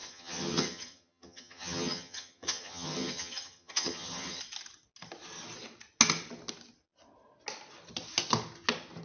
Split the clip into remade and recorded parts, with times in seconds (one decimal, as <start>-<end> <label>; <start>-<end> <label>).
0.0-4.4 remade; 4.4-9.0 recorded